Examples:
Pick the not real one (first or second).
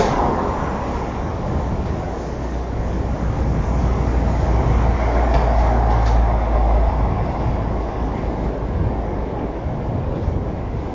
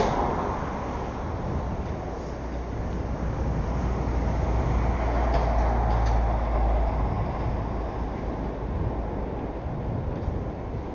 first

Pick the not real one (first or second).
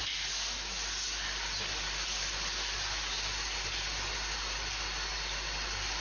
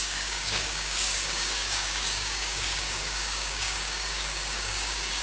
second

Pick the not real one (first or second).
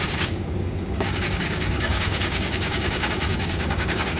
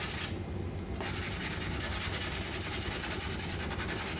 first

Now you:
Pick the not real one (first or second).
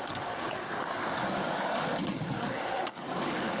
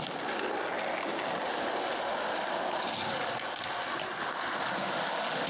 first